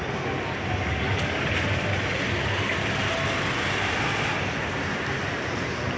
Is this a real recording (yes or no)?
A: yes